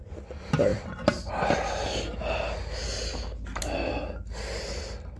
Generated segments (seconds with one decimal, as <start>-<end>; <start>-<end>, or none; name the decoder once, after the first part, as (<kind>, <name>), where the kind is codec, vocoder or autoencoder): none